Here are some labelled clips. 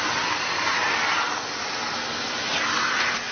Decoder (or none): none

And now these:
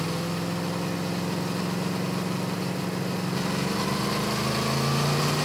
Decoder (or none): none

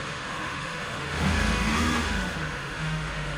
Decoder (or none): autoencoder, DAC-VAE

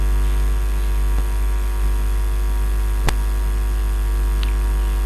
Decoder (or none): none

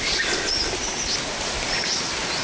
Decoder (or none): none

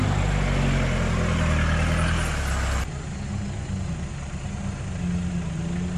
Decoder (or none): none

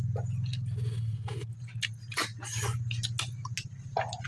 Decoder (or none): none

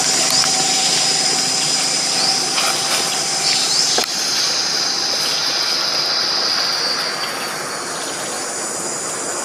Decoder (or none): none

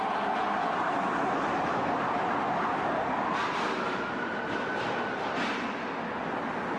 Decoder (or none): none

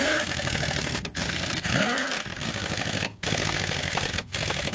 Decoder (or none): codec, SNAC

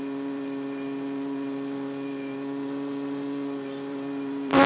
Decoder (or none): vocoder, BigVGAN v2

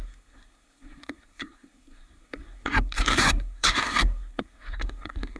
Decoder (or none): codec, SNAC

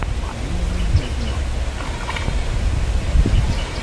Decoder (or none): none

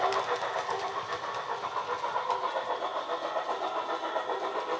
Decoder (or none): none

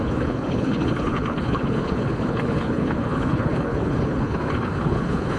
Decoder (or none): codec, HILCodec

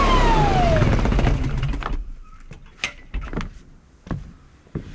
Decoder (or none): none